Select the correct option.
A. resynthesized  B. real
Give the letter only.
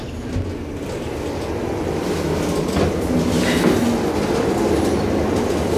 B